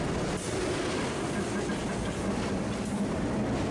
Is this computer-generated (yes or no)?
no